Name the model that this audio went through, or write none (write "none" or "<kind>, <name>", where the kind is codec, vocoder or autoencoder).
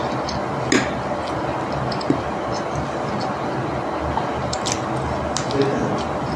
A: none